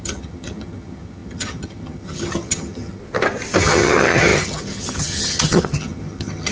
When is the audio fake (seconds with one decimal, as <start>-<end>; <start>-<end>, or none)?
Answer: 0.0-3.0; 3.6-6.5